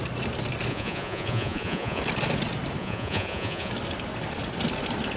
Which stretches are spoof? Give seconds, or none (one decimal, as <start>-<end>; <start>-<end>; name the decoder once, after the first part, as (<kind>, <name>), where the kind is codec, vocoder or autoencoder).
0.7-2.0 (vocoder, Vocos); 2.8-3.7